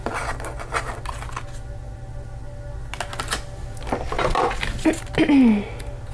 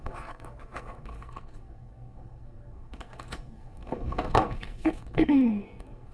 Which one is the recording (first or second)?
first